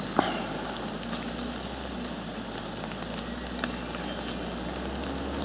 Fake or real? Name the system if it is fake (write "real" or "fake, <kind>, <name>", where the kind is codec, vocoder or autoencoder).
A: real